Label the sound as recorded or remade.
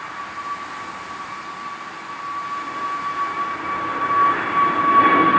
recorded